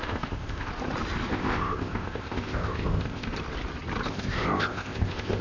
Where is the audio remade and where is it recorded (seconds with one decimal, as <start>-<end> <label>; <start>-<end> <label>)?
0.0-0.7 remade; 0.7-1.3 recorded; 1.3-3.3 remade; 3.3-4.1 recorded; 4.1-5.4 remade